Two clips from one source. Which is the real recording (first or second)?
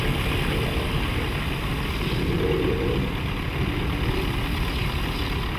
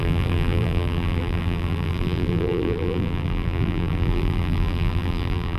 first